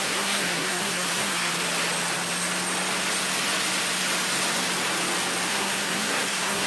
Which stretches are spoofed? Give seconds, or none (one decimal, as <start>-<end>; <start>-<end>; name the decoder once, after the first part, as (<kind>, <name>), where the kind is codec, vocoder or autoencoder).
0.0-1.5 (codec, SNAC); 5.5-6.7